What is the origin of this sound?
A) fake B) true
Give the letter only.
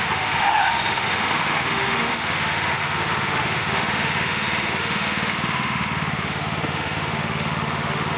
A